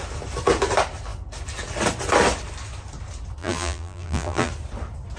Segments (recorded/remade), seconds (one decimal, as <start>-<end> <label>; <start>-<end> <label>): 0.0-3.4 recorded; 3.4-4.5 remade; 4.5-5.2 recorded